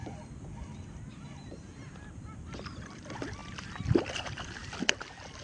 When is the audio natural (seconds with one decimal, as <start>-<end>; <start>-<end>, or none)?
3.4-4.0; 4.6-5.4